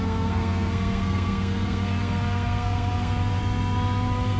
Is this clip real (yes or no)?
no